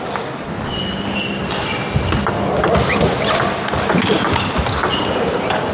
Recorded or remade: recorded